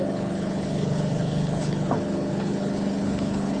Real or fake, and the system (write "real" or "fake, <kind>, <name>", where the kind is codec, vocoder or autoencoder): fake, codec, HILCodec